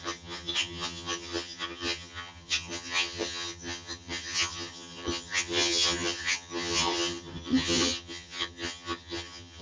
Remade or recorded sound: remade